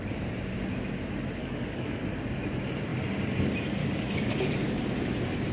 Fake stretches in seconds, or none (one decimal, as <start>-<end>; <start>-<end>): 1.4-2.0; 3.8-4.8